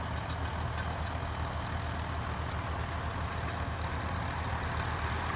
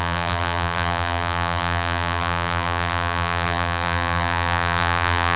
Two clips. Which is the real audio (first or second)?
first